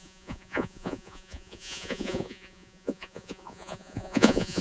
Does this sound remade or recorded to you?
remade